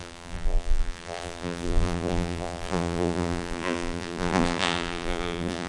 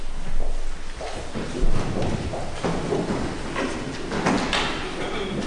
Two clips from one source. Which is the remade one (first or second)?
first